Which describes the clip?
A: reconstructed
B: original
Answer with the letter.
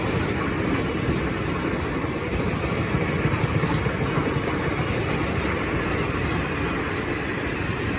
B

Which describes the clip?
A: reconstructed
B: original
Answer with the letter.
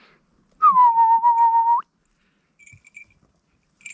B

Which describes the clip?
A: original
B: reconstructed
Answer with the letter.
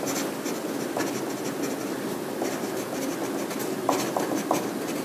A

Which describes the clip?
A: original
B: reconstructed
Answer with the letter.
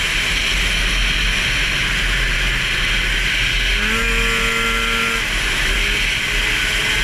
A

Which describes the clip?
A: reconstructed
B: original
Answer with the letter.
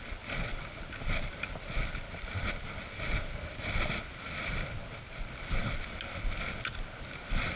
B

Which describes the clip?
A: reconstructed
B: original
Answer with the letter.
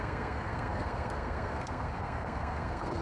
A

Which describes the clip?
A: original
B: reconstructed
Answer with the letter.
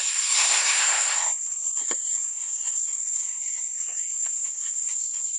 B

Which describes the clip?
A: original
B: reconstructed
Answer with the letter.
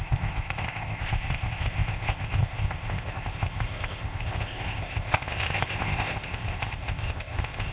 B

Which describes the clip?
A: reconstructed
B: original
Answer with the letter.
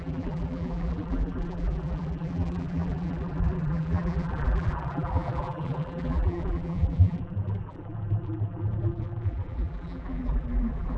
A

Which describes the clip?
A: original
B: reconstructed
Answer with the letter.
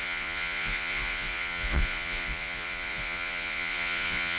B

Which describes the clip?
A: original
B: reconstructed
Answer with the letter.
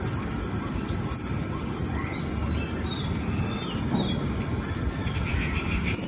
A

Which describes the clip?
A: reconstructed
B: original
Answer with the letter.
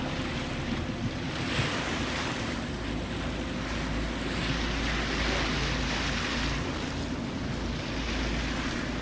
B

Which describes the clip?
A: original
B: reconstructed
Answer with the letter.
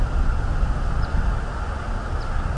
A